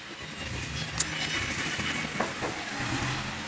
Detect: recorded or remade recorded